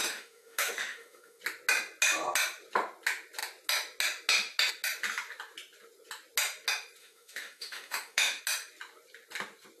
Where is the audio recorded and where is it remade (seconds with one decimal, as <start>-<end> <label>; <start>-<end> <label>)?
0.0-1.4 remade; 1.4-7.0 recorded; 7.0-8.4 remade; 8.4-9.8 recorded